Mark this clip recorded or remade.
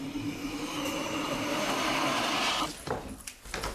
recorded